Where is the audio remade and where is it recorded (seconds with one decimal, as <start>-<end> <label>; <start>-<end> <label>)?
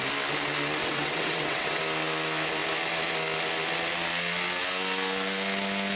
0.0-0.8 recorded; 0.8-1.8 remade; 1.8-6.0 recorded